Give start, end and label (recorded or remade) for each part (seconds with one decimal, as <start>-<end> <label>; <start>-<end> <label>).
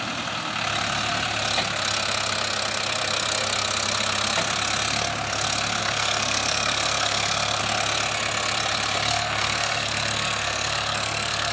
0.0-5.8 recorded; 5.8-7.6 remade; 7.6-9.1 recorded; 9.1-11.5 remade